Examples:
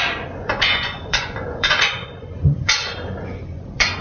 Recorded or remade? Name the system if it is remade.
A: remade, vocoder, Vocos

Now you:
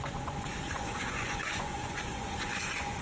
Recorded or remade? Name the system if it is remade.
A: remade, vocoder, Vocos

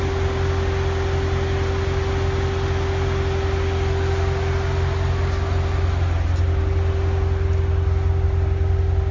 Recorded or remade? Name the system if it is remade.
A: recorded